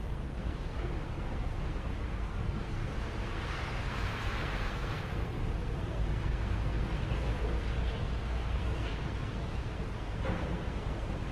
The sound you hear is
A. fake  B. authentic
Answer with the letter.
A